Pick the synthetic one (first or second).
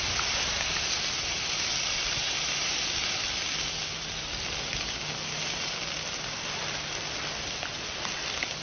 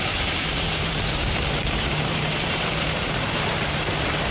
second